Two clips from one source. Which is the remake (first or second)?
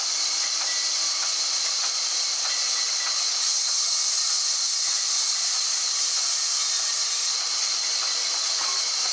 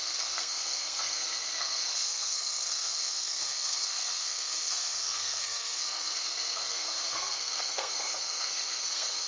second